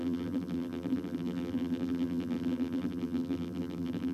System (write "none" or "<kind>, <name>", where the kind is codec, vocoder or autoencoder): vocoder, BigVGAN v2